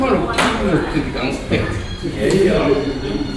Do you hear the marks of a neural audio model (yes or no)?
yes